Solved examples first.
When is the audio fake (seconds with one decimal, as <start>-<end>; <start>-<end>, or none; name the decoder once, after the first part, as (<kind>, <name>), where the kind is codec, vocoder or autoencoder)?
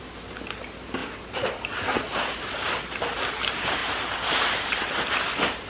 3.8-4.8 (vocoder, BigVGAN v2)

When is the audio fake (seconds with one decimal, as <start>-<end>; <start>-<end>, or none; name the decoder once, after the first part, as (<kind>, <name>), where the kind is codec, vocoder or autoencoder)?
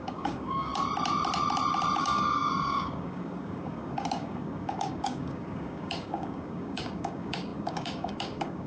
0.0-0.7 (codec, DAC); 2.0-8.7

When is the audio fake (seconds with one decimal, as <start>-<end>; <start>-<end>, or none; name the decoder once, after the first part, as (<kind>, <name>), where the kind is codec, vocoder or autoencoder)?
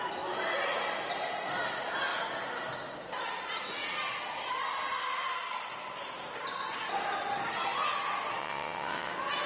8.4-9.1 (vocoder, WaveNeXt)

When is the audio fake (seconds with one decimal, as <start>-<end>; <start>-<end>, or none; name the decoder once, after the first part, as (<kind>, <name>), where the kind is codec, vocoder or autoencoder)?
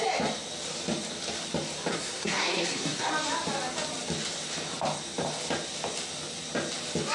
1.9-3.1 (codec, SNAC)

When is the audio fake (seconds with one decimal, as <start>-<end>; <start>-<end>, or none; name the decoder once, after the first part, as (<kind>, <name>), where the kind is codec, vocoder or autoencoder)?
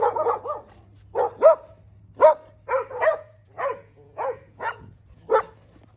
0.0-0.6 (vocoder, Vocos); 3.1-5.2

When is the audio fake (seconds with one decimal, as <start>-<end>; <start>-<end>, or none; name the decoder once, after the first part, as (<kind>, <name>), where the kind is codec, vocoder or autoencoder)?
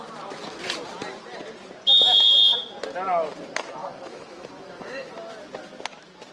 3.8-5.1 (autoencoder, DAC-VAE)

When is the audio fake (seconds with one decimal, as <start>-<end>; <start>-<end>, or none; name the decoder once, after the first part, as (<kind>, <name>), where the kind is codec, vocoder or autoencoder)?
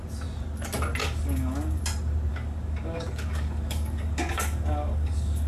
1.0-1.8 (codec, DAC); 2.3-5.5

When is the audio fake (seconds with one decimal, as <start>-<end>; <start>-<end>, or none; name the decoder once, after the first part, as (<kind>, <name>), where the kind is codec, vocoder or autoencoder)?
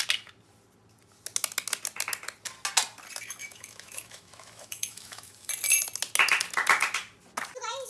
3.4-5.5 (autoencoder, DAC-VAE)